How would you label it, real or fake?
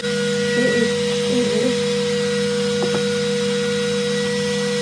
real